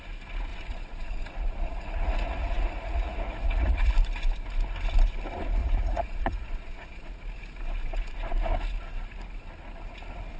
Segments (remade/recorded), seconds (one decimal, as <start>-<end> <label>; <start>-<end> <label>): 0.0-0.5 recorded; 0.5-3.9 remade; 3.9-5.6 recorded; 5.6-7.1 remade; 7.1-10.4 recorded